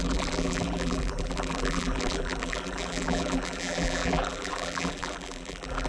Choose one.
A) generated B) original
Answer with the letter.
A